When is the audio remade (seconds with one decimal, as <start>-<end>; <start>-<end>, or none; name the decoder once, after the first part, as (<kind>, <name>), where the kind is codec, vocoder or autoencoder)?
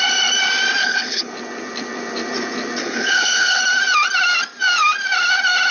0.8-1.3 (codec, HILCodec); 2.8-3.6